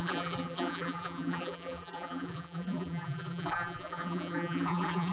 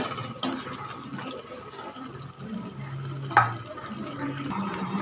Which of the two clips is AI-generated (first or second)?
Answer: first